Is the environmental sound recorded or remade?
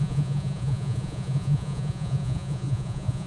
remade